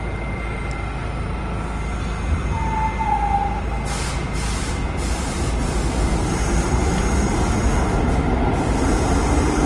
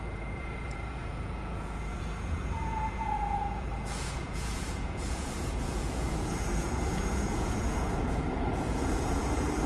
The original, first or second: first